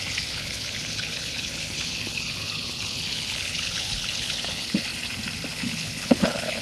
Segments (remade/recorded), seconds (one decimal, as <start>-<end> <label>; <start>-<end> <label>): 0.0-4.9 remade; 4.9-5.5 recorded; 5.5-6.6 remade